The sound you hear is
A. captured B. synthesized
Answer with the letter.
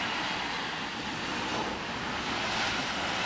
A